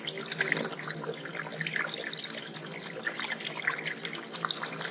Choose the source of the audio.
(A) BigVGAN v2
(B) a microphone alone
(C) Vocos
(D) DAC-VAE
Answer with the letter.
B